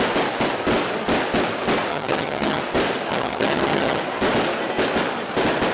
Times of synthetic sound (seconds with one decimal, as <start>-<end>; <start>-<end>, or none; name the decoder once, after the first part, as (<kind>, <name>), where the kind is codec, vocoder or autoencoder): 1.9-2.6 (vocoder, HiFi-GAN); 3.1-4.0